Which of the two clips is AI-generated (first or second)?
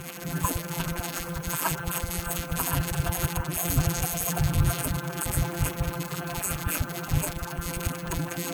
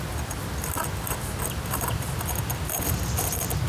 first